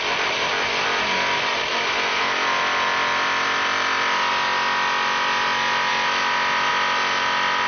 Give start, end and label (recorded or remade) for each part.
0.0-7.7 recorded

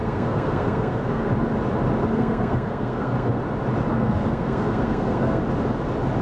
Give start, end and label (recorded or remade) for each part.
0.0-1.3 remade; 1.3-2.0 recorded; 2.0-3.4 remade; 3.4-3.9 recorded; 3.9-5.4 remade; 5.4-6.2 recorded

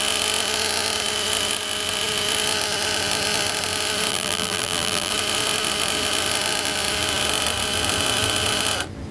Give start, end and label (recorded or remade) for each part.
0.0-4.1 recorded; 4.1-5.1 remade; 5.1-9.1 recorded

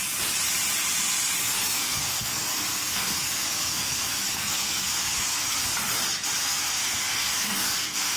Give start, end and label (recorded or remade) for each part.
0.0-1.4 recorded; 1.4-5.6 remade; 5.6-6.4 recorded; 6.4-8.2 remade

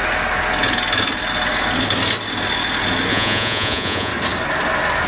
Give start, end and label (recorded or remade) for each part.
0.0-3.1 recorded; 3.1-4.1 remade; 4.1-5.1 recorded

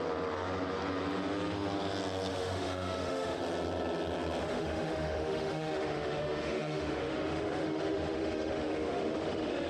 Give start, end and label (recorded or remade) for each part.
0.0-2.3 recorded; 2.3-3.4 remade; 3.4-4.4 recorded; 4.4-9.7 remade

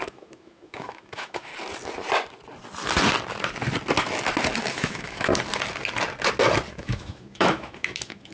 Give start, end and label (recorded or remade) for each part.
0.0-1.5 remade; 1.5-4.6 recorded; 4.6-5.3 remade; 5.3-6.7 recorded; 6.7-8.3 remade

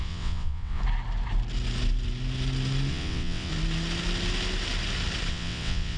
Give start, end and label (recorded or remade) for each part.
0.0-0.8 remade; 0.8-2.9 recorded; 2.9-3.5 remade; 3.5-5.3 recorded; 5.3-6.0 remade